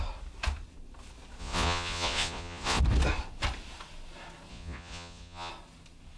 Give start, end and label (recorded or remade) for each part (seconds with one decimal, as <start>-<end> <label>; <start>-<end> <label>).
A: 0.0-1.4 recorded; 1.4-2.8 remade; 2.8-4.5 recorded; 4.5-5.5 remade; 5.5-6.2 recorded